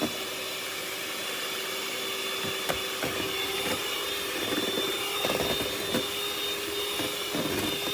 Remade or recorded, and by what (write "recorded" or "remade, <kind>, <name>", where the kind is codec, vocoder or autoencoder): recorded